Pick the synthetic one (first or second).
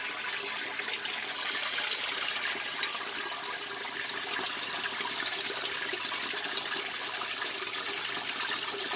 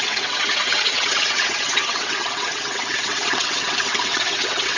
second